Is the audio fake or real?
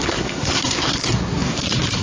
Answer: fake